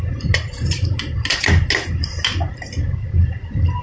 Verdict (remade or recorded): recorded